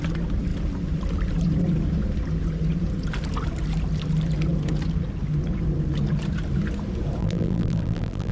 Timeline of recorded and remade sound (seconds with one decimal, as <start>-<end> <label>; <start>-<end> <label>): 0.0-7.2 recorded; 7.2-8.3 remade